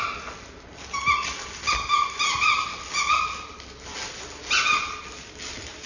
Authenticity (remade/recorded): recorded